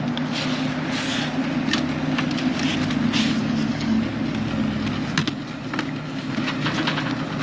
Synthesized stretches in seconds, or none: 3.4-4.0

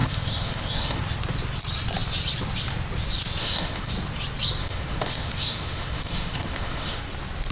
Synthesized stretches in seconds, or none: 0.0-1.0; 3.4-3.9; 4.6-7.0